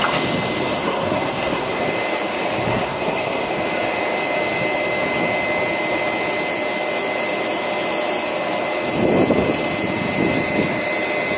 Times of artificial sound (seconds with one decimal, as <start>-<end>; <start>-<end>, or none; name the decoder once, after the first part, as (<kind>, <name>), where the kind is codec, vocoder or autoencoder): 0.8-1.8 (codec, SNAC); 2.7-3.5